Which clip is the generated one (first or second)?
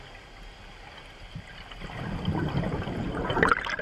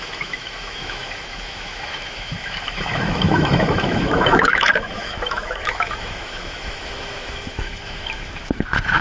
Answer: second